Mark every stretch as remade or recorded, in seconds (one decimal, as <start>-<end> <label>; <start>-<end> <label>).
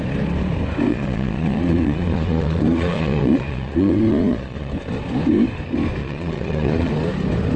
0.0-0.9 recorded; 0.9-4.7 remade; 4.7-6.0 recorded; 6.0-6.9 remade; 6.9-7.6 recorded